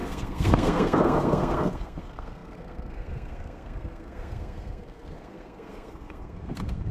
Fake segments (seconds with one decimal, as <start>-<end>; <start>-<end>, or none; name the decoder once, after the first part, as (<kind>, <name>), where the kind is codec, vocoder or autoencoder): 0.0-6.9 (codec, SNAC)